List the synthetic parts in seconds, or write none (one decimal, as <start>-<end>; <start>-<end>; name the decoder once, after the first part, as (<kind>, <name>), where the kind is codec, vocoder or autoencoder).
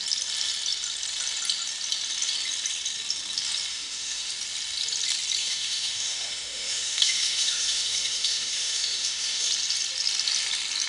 3.7-4.3 (autoencoder, DAC-VAE); 5.4-9.5